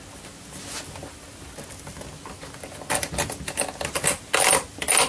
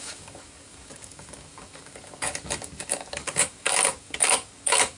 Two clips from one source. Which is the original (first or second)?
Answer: first